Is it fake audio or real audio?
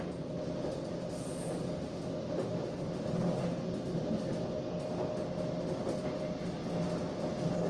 real